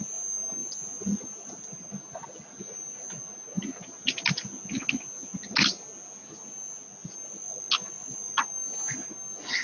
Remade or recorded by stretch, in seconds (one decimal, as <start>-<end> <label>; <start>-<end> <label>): 0.0-9.6 recorded